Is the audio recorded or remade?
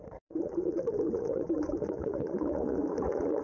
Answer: remade